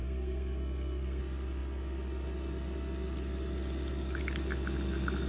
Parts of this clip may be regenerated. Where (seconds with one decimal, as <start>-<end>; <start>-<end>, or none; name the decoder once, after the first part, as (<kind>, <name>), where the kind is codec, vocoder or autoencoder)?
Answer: 0.0-1.2 (codec, SNAC)